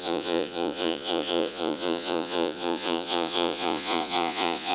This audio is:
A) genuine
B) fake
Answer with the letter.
B